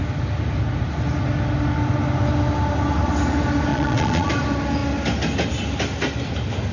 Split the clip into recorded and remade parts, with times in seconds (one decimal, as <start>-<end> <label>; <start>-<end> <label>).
0.0-3.7 recorded; 3.7-4.3 remade; 4.3-6.7 recorded